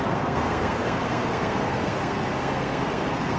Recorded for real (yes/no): no